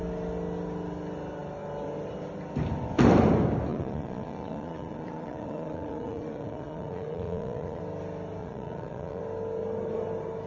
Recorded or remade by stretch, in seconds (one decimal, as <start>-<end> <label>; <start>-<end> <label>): 0.0-3.7 recorded; 3.7-7.8 remade; 7.8-8.4 recorded; 8.4-9.2 remade; 9.2-10.5 recorded